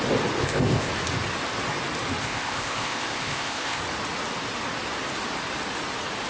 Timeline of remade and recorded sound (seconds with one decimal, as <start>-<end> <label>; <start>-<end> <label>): 0.0-0.4 recorded; 0.4-0.9 remade; 0.9-2.2 recorded; 2.2-3.8 remade; 3.8-6.3 recorded